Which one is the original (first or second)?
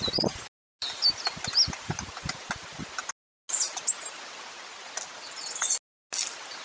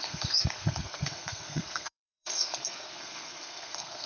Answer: first